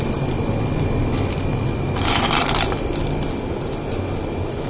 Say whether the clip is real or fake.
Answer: real